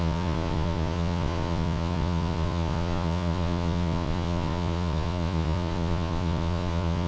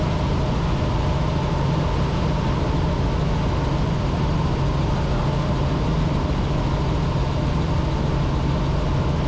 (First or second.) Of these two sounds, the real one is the second